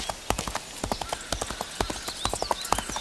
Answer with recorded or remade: recorded